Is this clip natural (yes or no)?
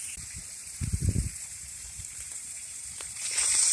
no